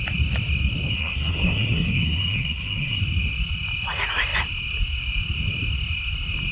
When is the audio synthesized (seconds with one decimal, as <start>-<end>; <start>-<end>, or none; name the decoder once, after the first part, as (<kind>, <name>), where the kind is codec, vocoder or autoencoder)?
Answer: 0.9-3.0 (codec, SNAC)